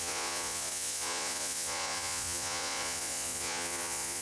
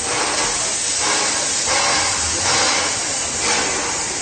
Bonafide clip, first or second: second